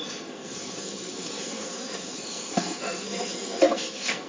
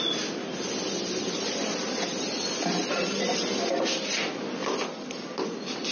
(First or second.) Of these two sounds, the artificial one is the first